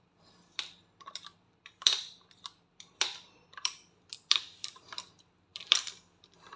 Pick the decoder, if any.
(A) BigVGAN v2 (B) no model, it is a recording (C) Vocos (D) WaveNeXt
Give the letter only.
A